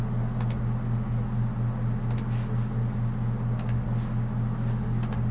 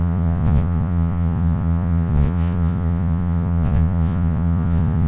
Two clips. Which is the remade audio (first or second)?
second